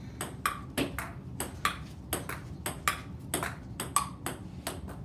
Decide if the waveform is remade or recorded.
recorded